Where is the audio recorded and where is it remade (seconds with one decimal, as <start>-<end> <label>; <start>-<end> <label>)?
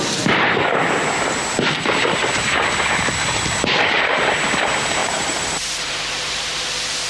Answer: 0.0-5.0 recorded; 5.0-6.0 remade; 6.0-7.1 recorded